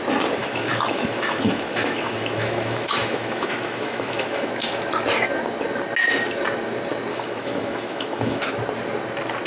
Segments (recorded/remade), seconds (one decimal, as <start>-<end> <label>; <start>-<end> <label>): 0.0-0.4 recorded; 0.4-4.5 remade; 4.5-7.1 recorded; 7.1-8.4 remade; 8.4-9.5 recorded